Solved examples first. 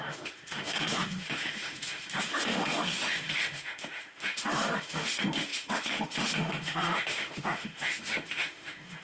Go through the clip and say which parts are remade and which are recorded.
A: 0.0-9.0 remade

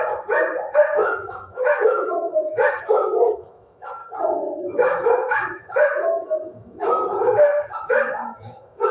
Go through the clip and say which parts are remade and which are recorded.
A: 0.0-4.0 remade; 4.0-4.6 recorded; 4.6-8.9 remade

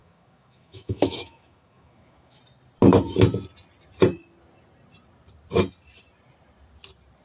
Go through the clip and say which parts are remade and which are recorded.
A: 0.0-2.4 remade; 2.4-7.2 recorded

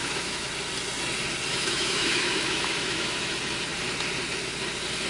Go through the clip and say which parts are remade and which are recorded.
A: 0.0-0.5 remade; 0.5-1.5 recorded; 1.5-3.3 remade; 3.3-5.1 recorded

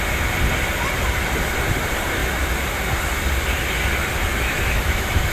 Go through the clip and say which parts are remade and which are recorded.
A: 0.0-4.3 recorded; 4.3-5.3 remade